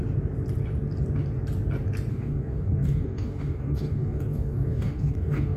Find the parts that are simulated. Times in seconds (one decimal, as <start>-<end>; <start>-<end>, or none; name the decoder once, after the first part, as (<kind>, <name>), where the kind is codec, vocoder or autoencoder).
2.1-5.6 (codec, DAC)